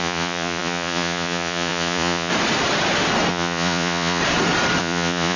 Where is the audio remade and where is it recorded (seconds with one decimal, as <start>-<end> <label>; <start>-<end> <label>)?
0.0-2.3 remade; 2.3-3.3 recorded; 3.3-4.2 remade; 4.2-4.8 recorded; 4.8-5.4 remade